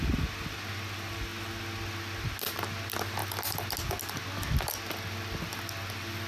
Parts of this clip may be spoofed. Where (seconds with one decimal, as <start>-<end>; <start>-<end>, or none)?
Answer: none